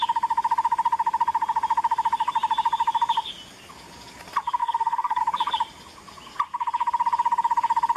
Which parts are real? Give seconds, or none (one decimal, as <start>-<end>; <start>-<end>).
0.0-4.6; 5.2-8.0